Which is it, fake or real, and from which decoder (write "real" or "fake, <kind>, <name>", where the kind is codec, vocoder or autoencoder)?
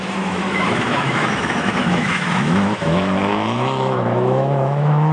fake, autoencoder, DAC-VAE